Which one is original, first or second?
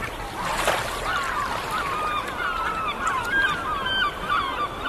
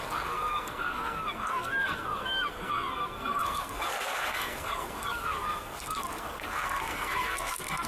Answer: first